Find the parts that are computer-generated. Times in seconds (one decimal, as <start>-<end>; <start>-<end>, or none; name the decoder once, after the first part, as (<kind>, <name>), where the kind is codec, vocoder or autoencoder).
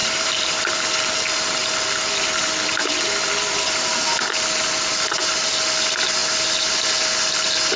0.0-0.5 (vocoder, BigVGAN v2)